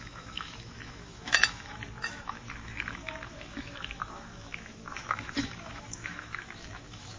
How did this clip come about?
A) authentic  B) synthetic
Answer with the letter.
B